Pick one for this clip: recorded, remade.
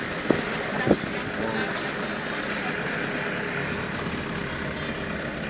recorded